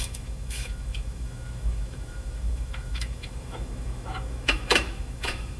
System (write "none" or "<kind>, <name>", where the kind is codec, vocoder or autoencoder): autoencoder, DAC-VAE